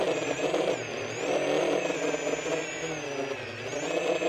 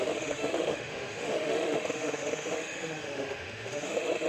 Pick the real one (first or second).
first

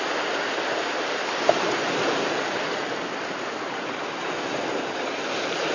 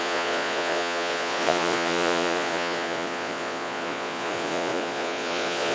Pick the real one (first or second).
first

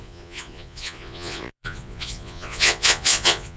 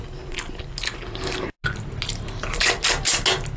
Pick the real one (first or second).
second